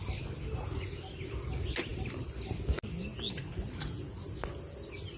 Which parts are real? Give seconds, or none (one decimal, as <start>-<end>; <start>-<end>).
0.0-5.2